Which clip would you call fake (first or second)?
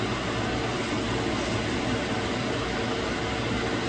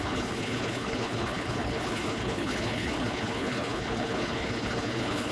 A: second